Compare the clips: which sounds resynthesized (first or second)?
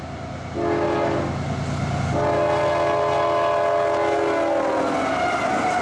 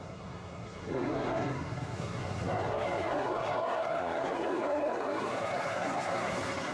second